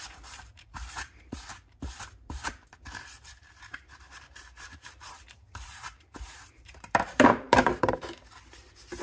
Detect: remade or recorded remade